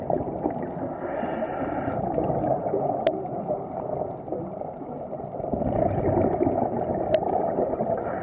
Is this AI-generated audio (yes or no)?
yes